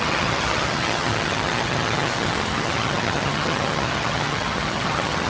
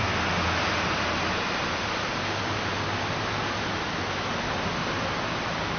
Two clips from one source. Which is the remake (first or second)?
first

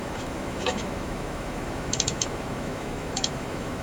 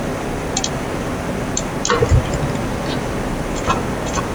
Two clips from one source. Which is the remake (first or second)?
first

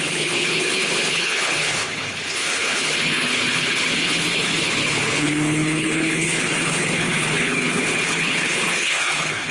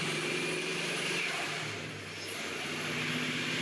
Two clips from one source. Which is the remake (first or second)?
first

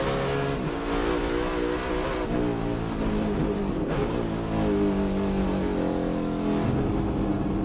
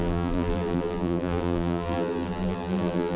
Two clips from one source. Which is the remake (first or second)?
second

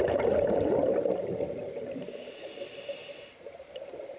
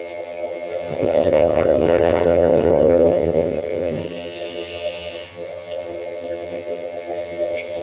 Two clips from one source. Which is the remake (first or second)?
second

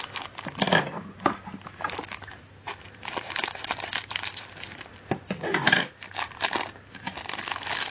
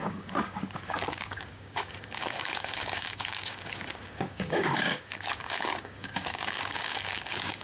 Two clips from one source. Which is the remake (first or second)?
second